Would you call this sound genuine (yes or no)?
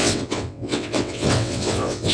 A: no